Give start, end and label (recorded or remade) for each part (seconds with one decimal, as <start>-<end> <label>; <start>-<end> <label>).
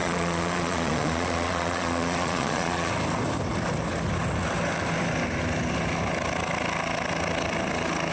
0.0-2.9 remade; 2.9-8.1 recorded